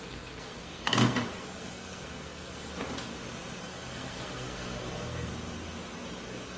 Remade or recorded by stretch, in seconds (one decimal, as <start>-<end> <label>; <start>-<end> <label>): 0.0-2.7 remade; 2.7-3.6 recorded; 3.6-5.3 remade; 5.3-6.6 recorded